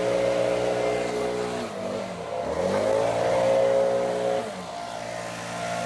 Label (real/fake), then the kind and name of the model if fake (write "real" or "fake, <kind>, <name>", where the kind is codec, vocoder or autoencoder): real